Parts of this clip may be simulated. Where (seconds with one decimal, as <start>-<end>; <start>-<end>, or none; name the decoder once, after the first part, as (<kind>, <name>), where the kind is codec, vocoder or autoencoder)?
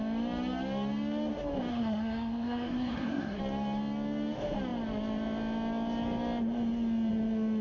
1.7-3.4 (codec, SNAC)